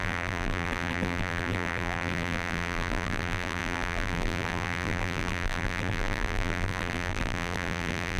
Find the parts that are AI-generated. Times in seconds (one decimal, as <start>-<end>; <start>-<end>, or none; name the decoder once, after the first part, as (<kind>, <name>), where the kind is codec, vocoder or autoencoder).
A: 0.0-8.2 (vocoder, BigVGAN v2)